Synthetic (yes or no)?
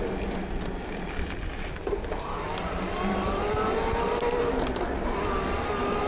no